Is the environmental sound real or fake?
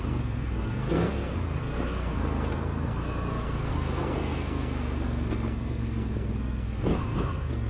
fake